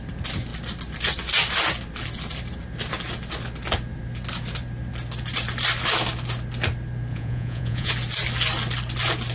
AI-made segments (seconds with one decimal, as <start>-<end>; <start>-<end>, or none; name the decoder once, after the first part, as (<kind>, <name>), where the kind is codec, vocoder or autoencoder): 7.1-7.9 (vocoder, Vocos)